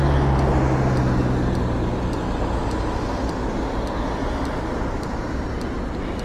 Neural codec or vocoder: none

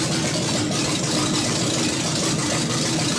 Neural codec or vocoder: none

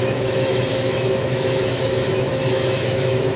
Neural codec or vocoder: autoencoder, DAC-VAE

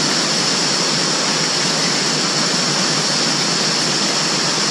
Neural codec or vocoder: none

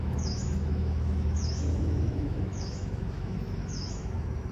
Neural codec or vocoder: autoencoder, DAC-VAE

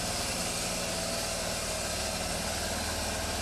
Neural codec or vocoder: none